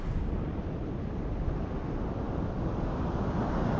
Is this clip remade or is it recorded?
recorded